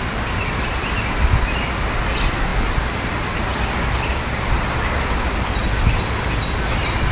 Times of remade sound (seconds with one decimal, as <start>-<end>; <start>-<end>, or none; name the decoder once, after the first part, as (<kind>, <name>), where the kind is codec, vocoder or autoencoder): none